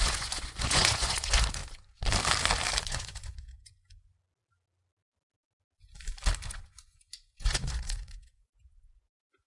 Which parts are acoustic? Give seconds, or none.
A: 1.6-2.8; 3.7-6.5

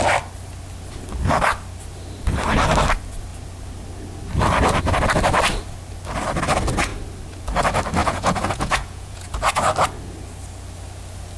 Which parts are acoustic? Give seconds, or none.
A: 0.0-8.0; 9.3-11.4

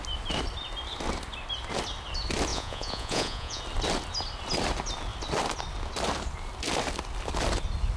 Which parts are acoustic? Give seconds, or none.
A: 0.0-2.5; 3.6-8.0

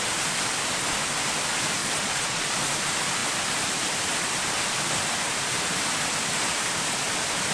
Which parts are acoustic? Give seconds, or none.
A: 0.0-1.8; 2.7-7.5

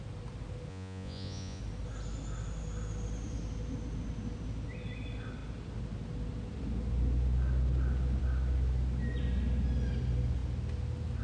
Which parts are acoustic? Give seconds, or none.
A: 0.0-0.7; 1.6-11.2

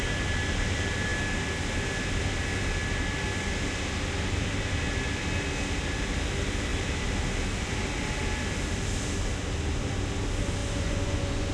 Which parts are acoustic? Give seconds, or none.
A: 0.0-10.6

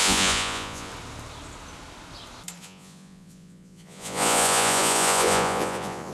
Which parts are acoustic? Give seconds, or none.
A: 0.9-2.6